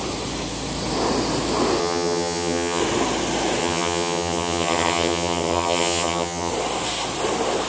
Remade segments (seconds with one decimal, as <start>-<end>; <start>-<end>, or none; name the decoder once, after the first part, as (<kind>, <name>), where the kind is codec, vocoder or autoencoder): 1.8-2.8 (vocoder, HiFi-GAN); 3.6-6.5